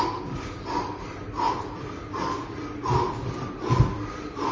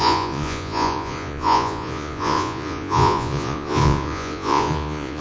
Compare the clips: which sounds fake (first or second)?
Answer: second